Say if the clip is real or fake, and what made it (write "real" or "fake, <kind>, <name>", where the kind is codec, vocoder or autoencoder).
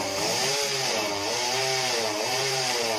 fake, vocoder, BigVGAN v2